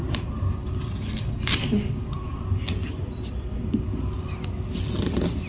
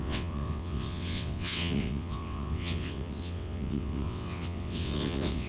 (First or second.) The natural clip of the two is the first